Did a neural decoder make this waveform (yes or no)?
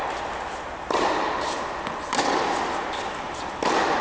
no